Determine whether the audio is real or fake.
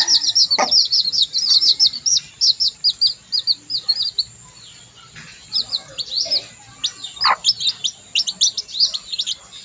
real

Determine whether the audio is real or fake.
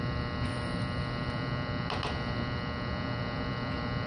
real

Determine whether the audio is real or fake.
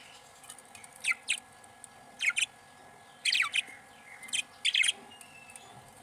real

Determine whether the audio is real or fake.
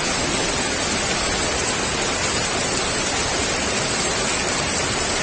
real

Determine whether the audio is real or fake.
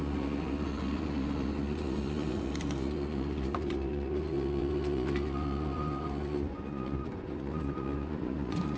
fake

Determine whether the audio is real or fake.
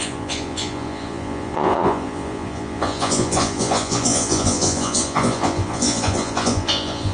fake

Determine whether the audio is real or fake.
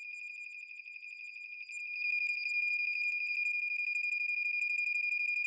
real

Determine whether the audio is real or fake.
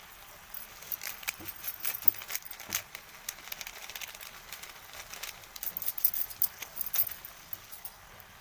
real